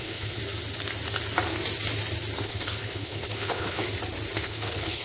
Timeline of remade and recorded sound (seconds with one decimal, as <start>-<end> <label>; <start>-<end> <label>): 0.0-0.4 remade; 0.4-2.4 recorded; 2.4-3.8 remade; 3.8-4.4 recorded; 4.4-5.0 remade